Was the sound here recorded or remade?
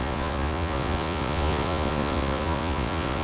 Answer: remade